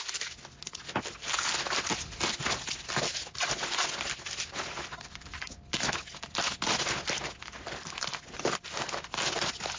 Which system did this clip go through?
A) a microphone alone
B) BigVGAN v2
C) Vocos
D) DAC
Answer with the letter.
A